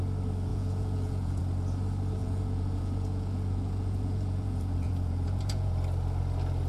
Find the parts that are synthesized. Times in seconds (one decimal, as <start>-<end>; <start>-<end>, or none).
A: 0.5-1.4; 2.2-5.7